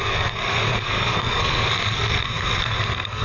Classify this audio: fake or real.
fake